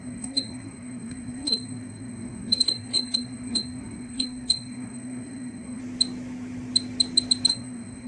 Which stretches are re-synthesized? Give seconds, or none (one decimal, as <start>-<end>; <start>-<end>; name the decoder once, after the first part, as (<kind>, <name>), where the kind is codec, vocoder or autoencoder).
0.0-5.8 (codec, SNAC); 7.5-8.1